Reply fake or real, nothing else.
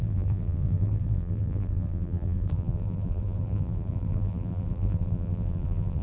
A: fake